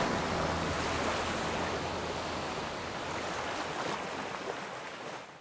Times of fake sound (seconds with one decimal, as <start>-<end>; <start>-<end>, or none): none